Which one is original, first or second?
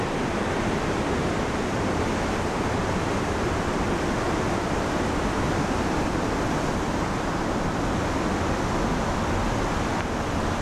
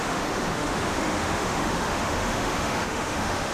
first